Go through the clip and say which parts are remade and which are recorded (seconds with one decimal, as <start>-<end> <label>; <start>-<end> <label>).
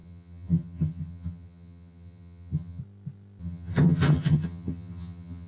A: 0.0-2.8 remade; 2.8-3.4 recorded; 3.4-5.5 remade